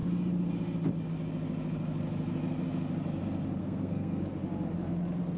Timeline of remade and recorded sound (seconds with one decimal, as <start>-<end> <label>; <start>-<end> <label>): 0.0-3.6 recorded; 3.6-4.2 remade; 4.2-5.4 recorded